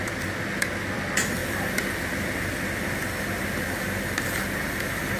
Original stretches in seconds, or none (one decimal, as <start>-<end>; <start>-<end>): 0.0-5.2